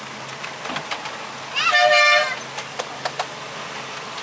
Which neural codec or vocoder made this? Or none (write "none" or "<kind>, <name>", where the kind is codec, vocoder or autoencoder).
none